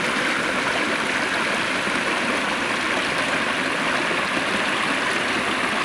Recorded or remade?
recorded